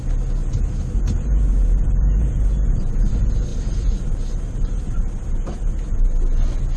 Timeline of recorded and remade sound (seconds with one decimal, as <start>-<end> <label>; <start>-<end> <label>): 0.0-0.4 recorded; 0.4-3.1 remade; 3.1-3.5 recorded; 3.5-5.7 remade; 5.7-6.8 recorded

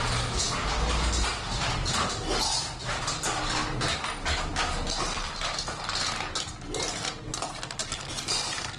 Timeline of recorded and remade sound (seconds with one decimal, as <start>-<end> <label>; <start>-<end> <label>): 0.0-8.8 recorded

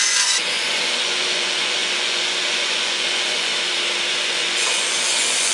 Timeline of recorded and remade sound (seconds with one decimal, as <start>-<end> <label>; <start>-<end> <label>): 0.0-3.5 remade; 3.5-4.1 recorded; 4.1-5.5 remade

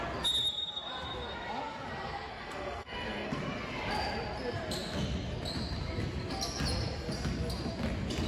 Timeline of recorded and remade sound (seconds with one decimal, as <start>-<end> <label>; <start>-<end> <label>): 0.0-2.3 recorded; 2.3-3.4 remade; 3.4-8.3 recorded

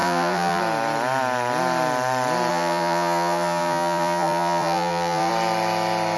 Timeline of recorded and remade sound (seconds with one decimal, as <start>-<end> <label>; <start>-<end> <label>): 0.0-0.6 remade; 0.6-2.5 recorded; 2.5-5.3 remade; 5.3-6.2 recorded